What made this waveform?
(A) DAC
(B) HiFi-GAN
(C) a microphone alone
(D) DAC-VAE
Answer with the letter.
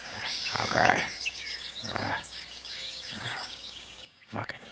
A